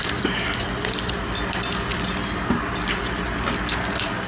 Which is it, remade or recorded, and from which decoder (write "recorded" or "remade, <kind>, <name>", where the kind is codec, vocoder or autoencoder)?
recorded